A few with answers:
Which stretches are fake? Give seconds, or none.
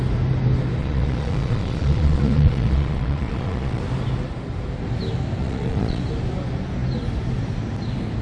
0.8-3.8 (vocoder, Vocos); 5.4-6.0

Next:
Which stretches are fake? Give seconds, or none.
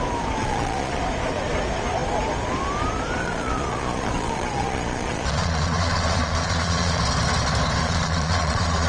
0.4-1.0 (vocoder, Vocos); 3.2-7.0; 7.8-8.9